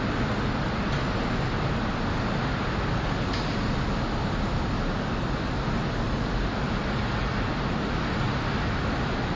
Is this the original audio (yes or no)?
yes